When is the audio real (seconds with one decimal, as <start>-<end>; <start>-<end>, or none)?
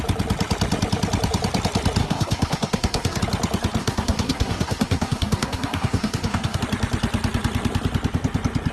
0.0-2.0; 3.2-3.8; 6.6-8.7